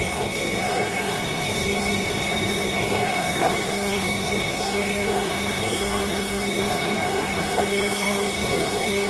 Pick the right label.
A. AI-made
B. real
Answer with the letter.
A